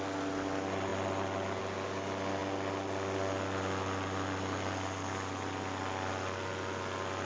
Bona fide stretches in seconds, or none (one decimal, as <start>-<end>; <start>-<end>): 0.0-7.3